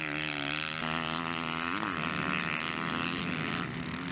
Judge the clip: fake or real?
real